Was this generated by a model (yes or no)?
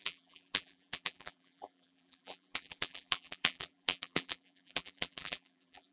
yes